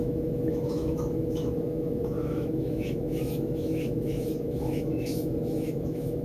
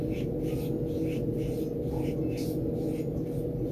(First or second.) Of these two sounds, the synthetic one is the first